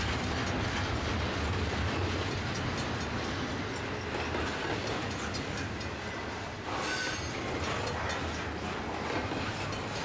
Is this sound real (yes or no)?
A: yes